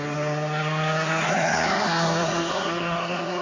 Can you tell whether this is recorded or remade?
remade